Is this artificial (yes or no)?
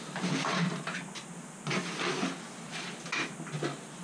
no